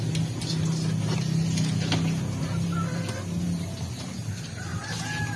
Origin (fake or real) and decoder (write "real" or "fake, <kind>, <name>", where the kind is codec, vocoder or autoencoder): real